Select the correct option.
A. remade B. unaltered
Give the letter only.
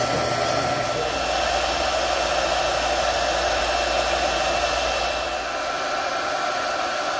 B